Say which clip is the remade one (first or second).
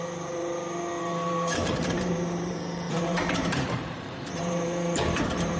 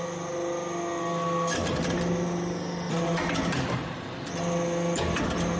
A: first